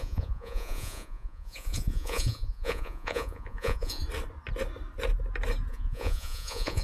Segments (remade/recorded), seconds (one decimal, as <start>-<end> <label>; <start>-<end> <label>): 0.0-4.0 remade; 4.0-5.7 recorded; 5.7-6.8 remade